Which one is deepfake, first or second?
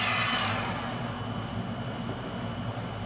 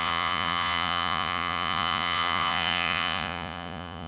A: second